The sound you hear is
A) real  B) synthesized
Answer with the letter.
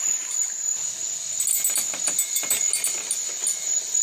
A